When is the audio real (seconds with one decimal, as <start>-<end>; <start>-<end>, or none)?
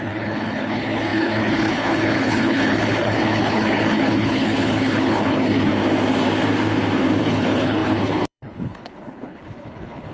5.7-7.2